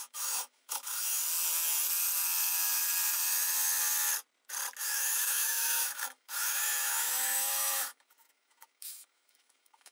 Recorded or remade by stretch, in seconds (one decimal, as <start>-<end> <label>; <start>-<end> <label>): 0.0-1.2 remade; 1.2-4.8 recorded; 4.8-9.9 remade